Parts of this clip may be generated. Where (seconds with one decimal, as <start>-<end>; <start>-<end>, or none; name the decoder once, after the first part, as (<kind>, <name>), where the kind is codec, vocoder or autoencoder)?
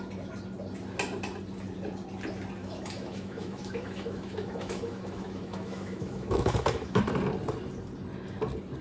2.6-7.0 (autoencoder, DAC-VAE)